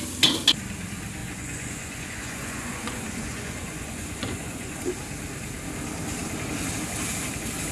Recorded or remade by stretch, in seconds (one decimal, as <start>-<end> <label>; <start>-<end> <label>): 0.0-1.2 recorded; 1.2-4.8 remade; 4.8-7.7 recorded